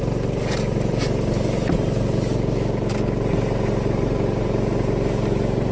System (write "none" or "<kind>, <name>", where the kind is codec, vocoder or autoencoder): none